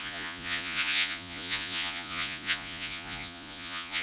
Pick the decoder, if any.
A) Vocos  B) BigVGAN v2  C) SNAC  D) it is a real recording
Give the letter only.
A